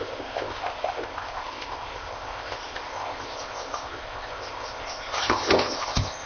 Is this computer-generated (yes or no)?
yes